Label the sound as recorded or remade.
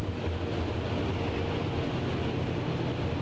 recorded